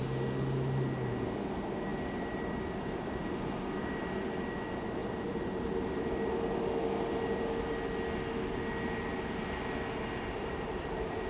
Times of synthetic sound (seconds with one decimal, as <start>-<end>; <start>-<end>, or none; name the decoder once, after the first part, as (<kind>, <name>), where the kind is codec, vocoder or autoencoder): 1.9-4.4 (vocoder, BigVGAN v2); 5.0-6.6